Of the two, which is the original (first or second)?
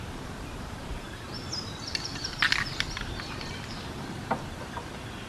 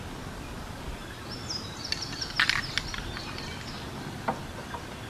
second